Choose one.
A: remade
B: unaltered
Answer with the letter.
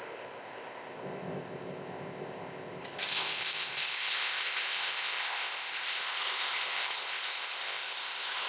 A